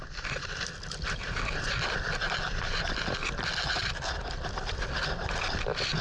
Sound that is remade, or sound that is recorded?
recorded